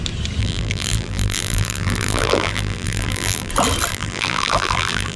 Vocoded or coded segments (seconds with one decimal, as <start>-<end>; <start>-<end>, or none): 0.4-3.5; 3.9-5.2